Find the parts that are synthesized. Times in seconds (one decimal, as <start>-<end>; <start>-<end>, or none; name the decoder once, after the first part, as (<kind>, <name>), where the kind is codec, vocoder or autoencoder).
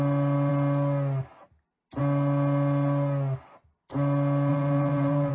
4.5-5.3 (vocoder, BigVGAN v2)